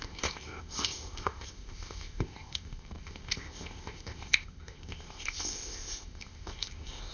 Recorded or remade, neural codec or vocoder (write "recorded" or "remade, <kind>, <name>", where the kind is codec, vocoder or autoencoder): remade, codec, ZipCodec